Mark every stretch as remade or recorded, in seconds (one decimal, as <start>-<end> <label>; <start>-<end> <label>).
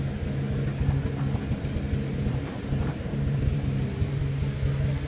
0.0-2.1 recorded; 2.1-4.2 remade; 4.2-5.1 recorded